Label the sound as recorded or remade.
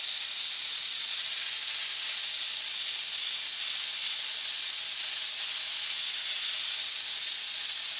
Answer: recorded